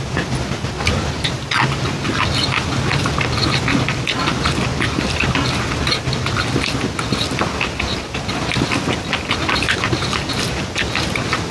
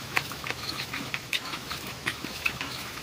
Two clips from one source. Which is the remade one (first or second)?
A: second